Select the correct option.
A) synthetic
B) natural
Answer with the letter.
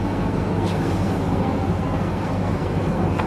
A